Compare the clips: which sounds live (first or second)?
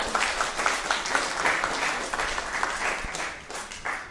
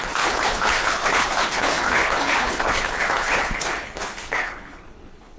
first